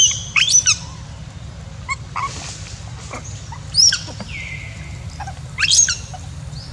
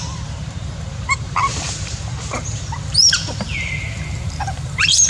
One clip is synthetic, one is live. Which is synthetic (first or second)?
second